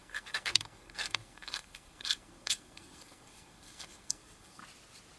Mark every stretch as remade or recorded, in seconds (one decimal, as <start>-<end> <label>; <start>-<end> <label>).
0.0-4.6 remade; 4.6-5.2 recorded